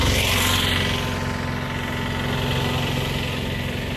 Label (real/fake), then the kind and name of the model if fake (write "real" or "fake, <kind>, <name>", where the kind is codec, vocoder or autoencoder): real